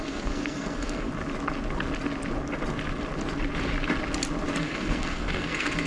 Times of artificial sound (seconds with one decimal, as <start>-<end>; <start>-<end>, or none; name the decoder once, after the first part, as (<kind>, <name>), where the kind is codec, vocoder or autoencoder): 0.0-1.1 (codec, SNAC); 4.6-5.9